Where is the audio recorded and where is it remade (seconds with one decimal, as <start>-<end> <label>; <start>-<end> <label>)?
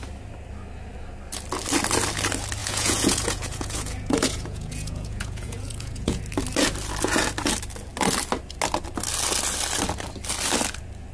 0.0-2.6 recorded; 2.6-6.2 remade; 6.2-11.1 recorded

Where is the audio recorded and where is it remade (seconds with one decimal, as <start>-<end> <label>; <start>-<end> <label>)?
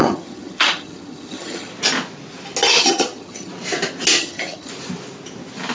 0.0-1.7 remade; 1.7-2.8 recorded; 2.8-3.5 remade; 3.5-4.2 recorded; 4.2-4.7 remade; 4.7-5.7 recorded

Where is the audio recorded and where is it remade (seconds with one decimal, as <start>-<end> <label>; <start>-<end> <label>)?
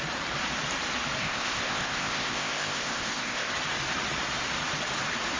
0.0-1.2 recorded; 1.2-3.5 remade; 3.5-5.4 recorded